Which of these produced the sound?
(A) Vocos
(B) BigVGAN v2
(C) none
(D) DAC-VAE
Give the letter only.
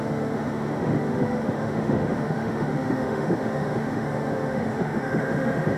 D